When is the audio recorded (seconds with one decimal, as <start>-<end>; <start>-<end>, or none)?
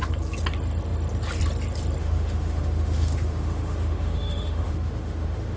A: 0.0-2.0